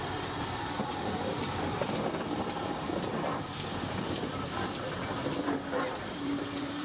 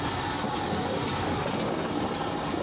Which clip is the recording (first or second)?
second